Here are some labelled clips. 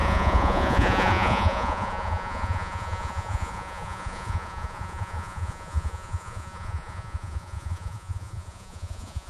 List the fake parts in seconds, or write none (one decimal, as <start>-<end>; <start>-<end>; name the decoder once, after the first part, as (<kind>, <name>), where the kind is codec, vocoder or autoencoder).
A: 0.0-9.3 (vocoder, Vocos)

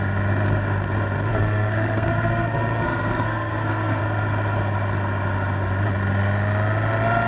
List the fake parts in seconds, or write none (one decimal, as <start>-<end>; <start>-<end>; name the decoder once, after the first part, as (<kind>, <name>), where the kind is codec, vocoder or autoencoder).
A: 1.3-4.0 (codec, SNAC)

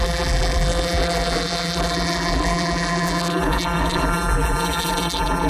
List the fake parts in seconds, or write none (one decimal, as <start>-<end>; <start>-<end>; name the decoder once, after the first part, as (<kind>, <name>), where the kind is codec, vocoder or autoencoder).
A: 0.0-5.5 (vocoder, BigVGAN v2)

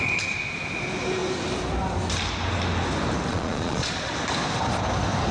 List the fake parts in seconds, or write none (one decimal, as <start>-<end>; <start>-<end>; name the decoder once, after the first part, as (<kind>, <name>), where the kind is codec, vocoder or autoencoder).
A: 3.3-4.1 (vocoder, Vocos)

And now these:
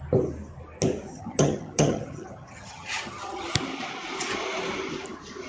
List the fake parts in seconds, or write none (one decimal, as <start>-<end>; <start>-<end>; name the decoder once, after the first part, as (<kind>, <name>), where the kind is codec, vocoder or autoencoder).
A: 1.1-3.5 (vocoder, HiFi-GAN)

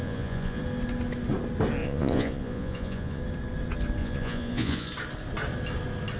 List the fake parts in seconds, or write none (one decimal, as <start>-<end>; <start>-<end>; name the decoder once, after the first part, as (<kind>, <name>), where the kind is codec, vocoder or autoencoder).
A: 0.0-0.6 (vocoder, Vocos); 1.8-3.2; 4.0-4.9

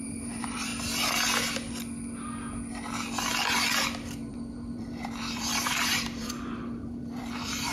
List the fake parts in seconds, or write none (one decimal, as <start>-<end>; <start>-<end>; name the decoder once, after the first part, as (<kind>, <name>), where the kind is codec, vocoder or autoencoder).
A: 0.0-0.7 (vocoder, BigVGAN v2); 4.3-7.7